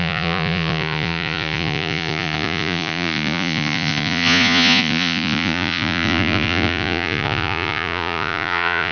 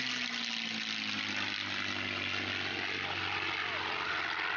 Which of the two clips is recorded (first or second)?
second